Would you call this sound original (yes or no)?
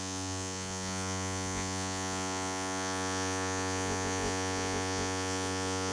no